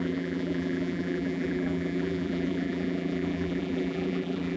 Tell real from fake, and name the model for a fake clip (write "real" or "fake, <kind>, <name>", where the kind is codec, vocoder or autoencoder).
fake, vocoder, BigVGAN v2